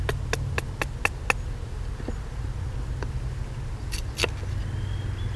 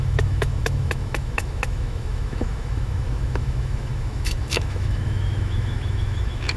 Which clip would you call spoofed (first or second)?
second